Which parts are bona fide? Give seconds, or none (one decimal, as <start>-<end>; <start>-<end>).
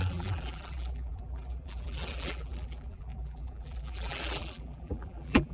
none